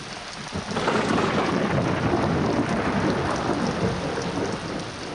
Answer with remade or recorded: recorded